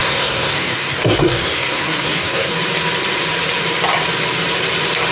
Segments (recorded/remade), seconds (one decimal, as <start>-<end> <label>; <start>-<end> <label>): 0.0-2.5 remade; 2.5-5.1 recorded